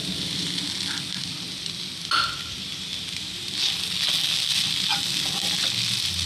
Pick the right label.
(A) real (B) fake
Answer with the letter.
A